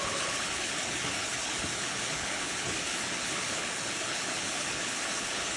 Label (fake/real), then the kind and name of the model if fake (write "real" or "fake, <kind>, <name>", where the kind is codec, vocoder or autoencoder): fake, codec, HILCodec